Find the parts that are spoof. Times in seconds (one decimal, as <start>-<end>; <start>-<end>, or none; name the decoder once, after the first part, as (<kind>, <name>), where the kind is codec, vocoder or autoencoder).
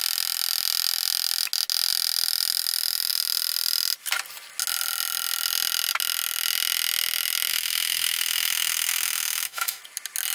7.5-9.8 (autoencoder, DAC-VAE)